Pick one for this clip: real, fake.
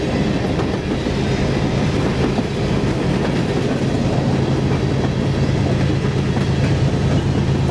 real